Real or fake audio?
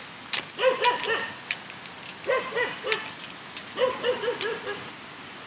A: real